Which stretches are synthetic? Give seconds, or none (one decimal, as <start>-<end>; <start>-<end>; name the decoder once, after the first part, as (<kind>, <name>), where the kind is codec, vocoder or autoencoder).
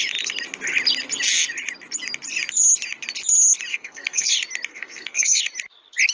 3.7-4.3 (codec, SNAC); 4.7-5.4